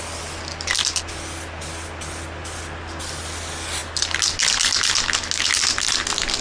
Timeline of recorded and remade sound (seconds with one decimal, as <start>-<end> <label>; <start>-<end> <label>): 0.0-6.4 recorded